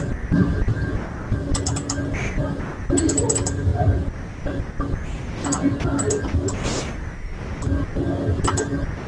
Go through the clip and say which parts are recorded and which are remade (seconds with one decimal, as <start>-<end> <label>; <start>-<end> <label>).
0.0-9.1 recorded